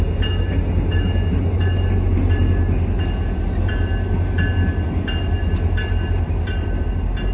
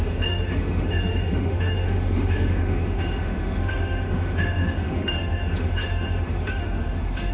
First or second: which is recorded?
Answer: first